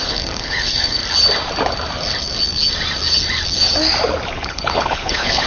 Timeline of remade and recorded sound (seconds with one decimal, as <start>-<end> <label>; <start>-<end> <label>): 0.0-1.0 remade; 1.0-4.3 recorded; 4.3-5.5 remade